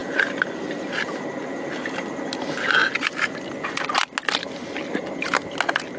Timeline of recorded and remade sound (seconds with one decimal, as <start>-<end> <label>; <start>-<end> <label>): 0.0-6.0 recorded